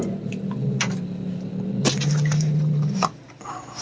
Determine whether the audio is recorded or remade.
recorded